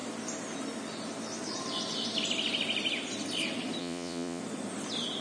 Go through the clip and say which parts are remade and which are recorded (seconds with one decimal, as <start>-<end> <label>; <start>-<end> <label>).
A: 0.0-3.8 recorded; 3.8-4.4 remade; 4.4-5.2 recorded